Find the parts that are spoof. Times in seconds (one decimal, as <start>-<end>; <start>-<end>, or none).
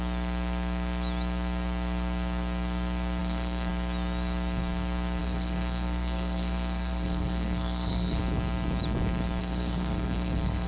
3.2-3.7; 5.2-8.2; 9.4-10.7